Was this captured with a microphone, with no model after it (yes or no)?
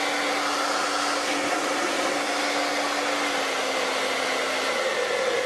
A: yes